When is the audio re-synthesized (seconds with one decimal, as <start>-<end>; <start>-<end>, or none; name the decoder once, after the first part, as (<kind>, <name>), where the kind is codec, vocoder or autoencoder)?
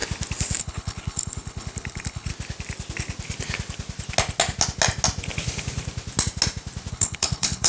0.6-2.3 (codec, HILCodec); 6.9-7.7